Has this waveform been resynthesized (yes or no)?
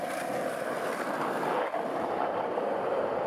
no